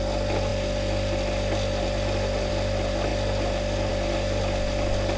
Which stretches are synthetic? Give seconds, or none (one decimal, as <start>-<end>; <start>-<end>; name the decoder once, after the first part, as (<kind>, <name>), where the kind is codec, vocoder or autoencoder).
none